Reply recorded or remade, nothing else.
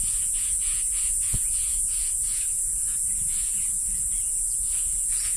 remade